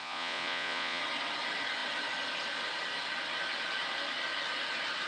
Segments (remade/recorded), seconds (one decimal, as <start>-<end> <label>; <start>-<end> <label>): 0.0-1.0 remade; 1.0-5.1 recorded